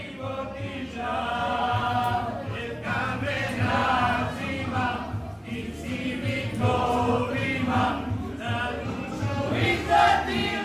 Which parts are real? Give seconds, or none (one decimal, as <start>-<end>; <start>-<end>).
0.0-10.6